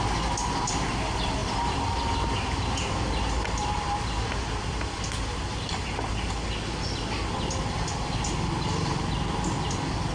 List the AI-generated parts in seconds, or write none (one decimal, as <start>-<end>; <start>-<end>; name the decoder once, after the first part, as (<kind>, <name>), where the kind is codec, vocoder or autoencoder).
none